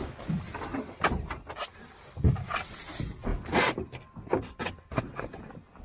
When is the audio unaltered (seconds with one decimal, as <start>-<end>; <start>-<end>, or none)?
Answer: 0.0-5.8